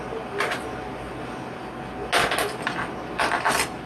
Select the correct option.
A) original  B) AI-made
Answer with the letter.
A